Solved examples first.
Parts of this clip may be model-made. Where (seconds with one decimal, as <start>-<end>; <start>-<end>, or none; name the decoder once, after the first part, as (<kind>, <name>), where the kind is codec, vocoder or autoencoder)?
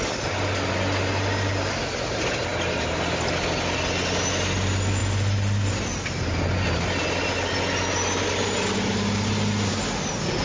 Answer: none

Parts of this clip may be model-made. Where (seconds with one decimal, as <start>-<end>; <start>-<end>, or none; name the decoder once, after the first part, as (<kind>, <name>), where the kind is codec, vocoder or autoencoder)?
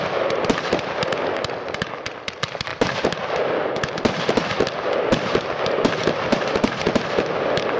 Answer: none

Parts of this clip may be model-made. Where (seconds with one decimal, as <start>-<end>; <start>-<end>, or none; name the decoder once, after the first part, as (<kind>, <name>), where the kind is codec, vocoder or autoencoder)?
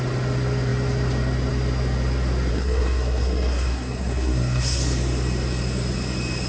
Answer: 2.5-4.8 (codec, SNAC)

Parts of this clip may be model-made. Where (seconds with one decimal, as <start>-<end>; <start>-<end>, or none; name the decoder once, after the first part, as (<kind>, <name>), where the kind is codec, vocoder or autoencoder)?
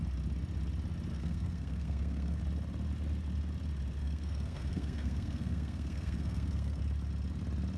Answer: 1.1-2.4 (codec, SNAC); 4.0-6.8